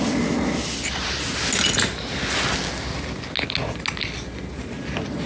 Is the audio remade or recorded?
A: recorded